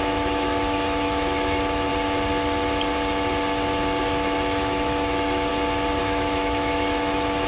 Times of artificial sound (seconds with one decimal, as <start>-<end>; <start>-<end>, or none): 0.0-1.9; 4.0-5.5; 6.0-7.5